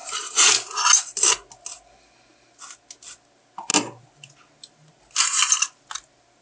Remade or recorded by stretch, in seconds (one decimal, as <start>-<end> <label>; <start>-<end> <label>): 0.0-6.4 recorded